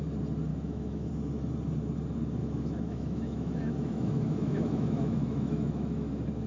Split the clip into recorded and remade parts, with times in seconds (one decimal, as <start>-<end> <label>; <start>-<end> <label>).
0.0-0.5 recorded; 0.5-1.1 remade; 1.1-2.4 recorded; 2.4-6.1 remade; 6.1-6.5 recorded